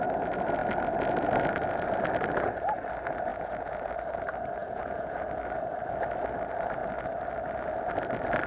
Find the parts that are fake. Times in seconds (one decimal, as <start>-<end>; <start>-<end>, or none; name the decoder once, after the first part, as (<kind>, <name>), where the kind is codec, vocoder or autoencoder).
3.3-3.9 (vocoder, Vocos); 4.6-5.2